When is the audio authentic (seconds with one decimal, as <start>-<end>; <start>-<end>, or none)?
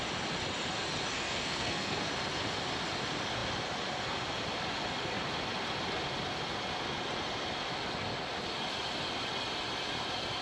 0.0-1.1; 2.1-10.4